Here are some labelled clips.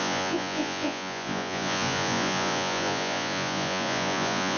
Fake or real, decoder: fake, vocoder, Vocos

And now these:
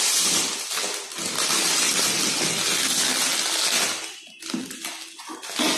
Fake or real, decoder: real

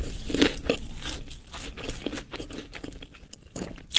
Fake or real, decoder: real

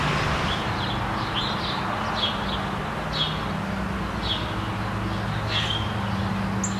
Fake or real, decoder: real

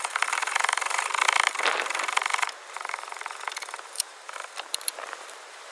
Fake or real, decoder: fake, vocoder, BigVGAN v2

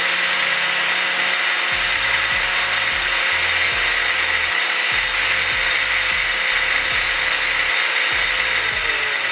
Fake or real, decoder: real